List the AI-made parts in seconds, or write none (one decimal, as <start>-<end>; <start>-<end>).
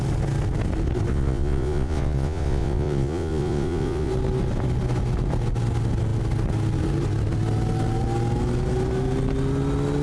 1.1-4.1